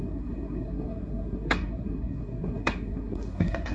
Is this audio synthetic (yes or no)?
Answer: yes